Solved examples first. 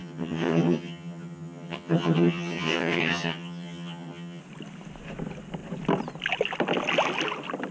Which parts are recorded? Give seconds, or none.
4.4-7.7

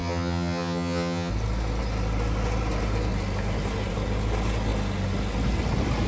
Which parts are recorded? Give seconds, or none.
1.3-6.1